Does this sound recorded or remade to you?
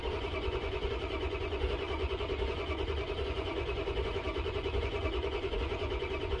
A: remade